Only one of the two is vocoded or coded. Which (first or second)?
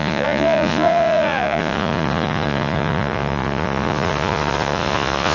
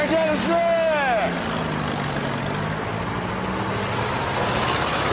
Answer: first